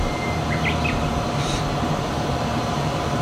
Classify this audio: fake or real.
fake